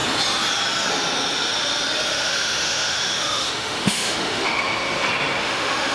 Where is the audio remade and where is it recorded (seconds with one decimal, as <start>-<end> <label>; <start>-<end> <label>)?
0.0-2.1 recorded; 2.1-4.6 remade; 4.6-5.4 recorded; 5.4-5.9 remade

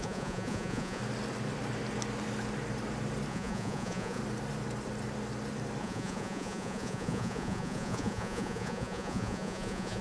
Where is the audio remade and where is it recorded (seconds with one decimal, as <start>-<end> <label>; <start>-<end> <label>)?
0.0-1.0 remade; 1.0-3.3 recorded; 3.3-4.2 remade; 4.2-5.8 recorded; 5.8-10.0 remade